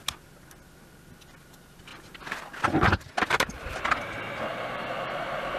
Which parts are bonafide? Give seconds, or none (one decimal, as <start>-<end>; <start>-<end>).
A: 0.0-5.6